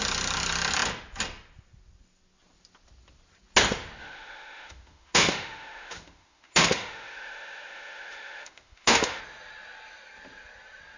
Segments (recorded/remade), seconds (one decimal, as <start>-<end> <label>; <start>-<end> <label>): 0.0-4.0 recorded; 4.0-9.2 remade; 9.2-11.0 recorded